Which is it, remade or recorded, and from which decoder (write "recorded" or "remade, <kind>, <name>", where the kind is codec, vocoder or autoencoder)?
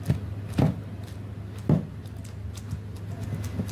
recorded